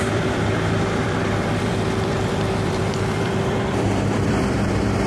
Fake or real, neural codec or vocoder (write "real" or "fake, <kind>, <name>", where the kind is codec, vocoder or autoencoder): fake, vocoder, BigVGAN v2